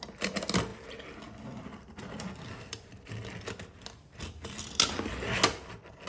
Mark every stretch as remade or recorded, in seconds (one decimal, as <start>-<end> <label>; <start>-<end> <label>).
0.0-6.1 recorded